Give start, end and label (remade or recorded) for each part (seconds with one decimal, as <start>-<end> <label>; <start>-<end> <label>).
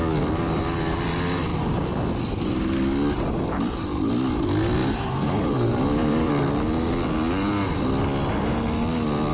0.0-4.8 recorded; 4.8-6.3 remade; 6.3-9.3 recorded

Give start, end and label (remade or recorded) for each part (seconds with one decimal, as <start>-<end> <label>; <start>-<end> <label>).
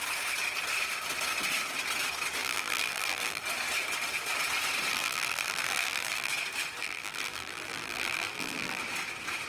0.0-2.4 recorded; 2.4-3.4 remade; 3.4-4.9 recorded; 4.9-6.3 remade; 6.3-6.8 recorded; 6.8-8.8 remade; 8.8-9.5 recorded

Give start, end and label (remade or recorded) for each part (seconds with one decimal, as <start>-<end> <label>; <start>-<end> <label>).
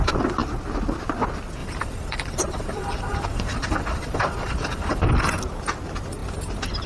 0.0-1.6 recorded; 1.6-5.1 remade; 5.1-6.9 recorded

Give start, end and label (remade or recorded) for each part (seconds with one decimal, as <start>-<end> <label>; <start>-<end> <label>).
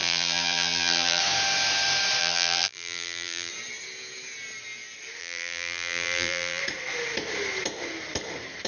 0.0-1.2 remade; 1.2-2.2 recorded; 2.2-3.5 remade; 3.5-5.2 recorded; 5.2-6.6 remade; 6.6-8.7 recorded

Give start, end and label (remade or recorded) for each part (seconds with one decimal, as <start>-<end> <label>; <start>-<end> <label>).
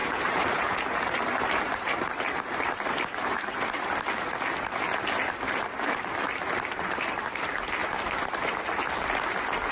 0.0-3.9 remade; 3.9-7.8 recorded; 7.8-8.6 remade; 8.6-9.7 recorded